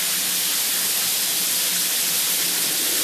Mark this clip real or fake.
real